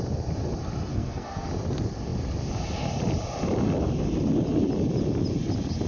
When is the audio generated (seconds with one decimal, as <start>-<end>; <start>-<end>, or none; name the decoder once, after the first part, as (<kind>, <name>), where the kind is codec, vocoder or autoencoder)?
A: 0.9-1.5 (codec, SNAC)